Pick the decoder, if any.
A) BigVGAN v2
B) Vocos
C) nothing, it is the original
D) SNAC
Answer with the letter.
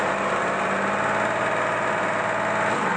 C